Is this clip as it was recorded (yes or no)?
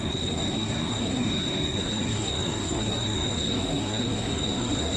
no